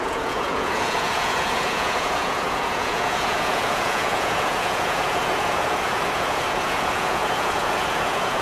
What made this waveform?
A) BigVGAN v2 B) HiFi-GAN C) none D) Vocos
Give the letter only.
D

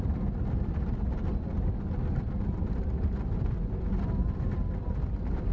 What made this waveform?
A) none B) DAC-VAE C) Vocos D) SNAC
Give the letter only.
A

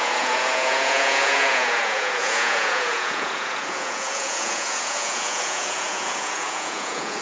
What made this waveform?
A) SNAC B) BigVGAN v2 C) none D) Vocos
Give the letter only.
D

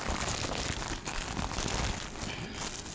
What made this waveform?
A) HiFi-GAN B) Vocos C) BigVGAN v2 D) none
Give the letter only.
D